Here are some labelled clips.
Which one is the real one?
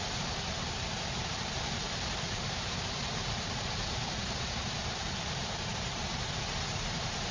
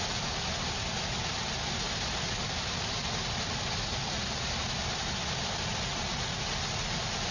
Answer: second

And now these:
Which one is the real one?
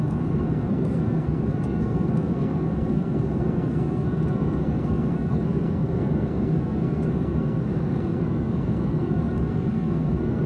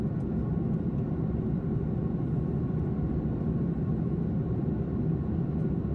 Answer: second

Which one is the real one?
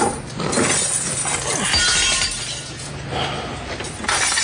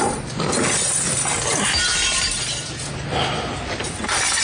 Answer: first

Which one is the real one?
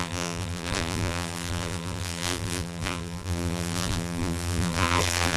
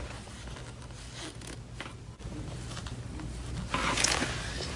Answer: second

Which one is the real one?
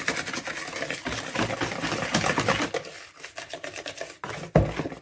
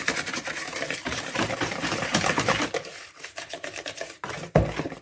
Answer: first